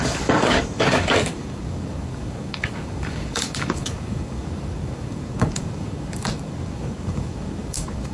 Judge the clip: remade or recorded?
remade